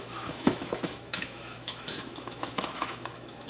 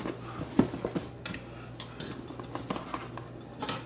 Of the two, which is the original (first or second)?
second